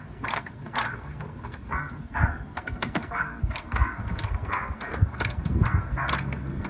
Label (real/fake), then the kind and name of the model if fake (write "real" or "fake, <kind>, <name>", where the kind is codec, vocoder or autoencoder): fake, codec, SNAC